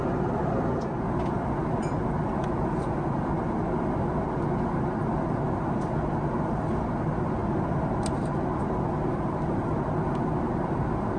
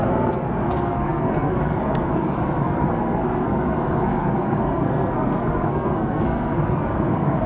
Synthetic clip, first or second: second